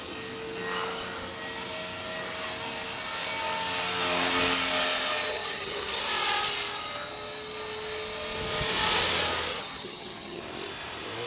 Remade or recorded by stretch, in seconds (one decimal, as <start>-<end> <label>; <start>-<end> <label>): 0.0-5.3 recorded; 5.3-6.0 remade; 6.0-9.5 recorded; 9.5-10.4 remade; 10.4-11.3 recorded